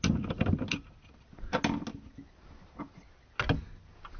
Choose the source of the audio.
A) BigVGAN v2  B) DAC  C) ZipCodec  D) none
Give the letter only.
D